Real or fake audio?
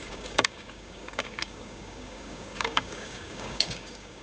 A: fake